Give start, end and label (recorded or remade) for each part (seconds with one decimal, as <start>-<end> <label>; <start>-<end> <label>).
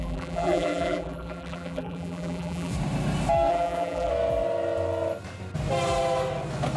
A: 0.0-2.7 remade; 2.7-3.5 recorded; 3.5-4.1 remade; 4.1-6.8 recorded